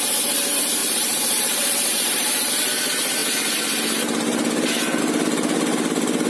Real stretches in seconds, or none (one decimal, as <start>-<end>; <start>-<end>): 0.0-0.8; 2.5-6.3